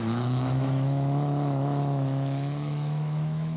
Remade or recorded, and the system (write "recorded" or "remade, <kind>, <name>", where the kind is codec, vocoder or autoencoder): remade, autoencoder, DAC-VAE